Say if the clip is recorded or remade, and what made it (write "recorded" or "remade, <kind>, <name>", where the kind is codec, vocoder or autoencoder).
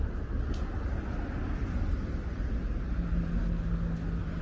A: recorded